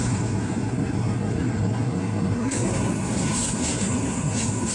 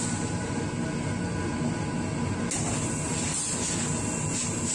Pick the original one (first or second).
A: second